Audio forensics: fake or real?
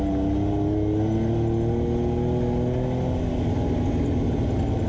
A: real